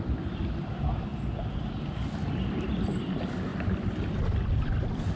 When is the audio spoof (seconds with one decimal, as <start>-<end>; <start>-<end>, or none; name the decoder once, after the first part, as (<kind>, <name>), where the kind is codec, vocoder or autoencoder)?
none